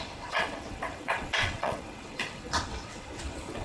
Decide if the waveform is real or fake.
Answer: fake